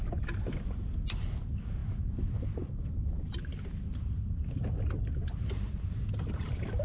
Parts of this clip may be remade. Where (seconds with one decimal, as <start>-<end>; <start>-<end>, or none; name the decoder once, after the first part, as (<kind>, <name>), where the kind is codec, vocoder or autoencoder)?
none